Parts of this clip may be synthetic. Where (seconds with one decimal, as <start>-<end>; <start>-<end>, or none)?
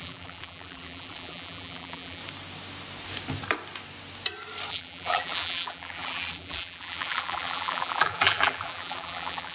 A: 0.0-2.2; 4.7-9.5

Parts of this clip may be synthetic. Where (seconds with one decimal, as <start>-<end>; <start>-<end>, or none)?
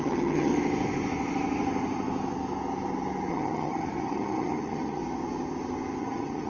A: 0.0-0.5; 3.3-5.0; 6.0-6.5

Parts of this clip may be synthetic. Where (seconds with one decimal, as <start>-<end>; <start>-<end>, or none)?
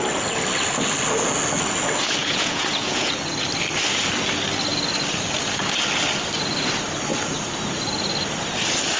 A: 2.2-3.1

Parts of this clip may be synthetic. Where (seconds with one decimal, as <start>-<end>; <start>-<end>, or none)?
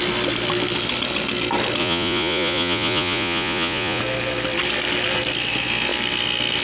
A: 1.8-4.0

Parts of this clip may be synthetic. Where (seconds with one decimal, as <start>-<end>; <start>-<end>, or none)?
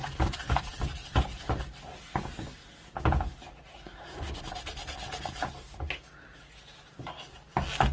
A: 3.7-4.4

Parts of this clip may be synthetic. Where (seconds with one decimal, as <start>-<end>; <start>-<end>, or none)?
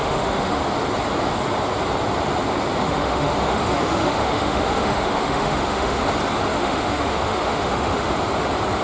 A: 0.0-0.6; 2.8-6.1; 6.5-8.1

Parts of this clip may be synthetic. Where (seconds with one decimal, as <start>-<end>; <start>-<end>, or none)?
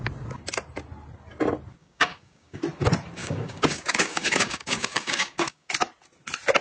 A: 1.8-2.6; 3.2-5.7